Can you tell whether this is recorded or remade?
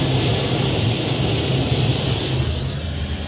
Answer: recorded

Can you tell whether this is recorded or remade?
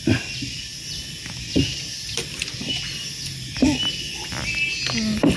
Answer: recorded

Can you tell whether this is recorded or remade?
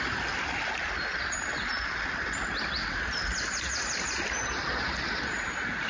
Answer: recorded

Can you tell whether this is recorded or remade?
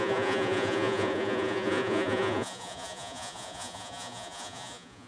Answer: remade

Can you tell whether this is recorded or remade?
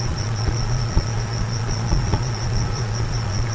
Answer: remade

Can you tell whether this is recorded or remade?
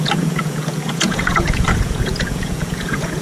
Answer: remade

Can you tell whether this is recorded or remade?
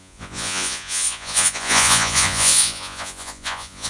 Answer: remade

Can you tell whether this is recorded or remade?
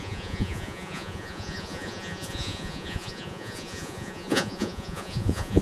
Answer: remade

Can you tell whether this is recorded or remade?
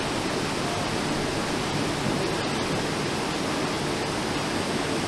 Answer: recorded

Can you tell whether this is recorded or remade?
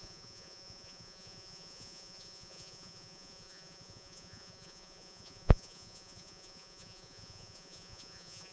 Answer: remade